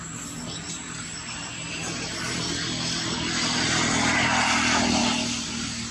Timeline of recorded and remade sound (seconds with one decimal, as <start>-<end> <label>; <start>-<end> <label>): 0.0-5.0 remade; 5.0-5.9 recorded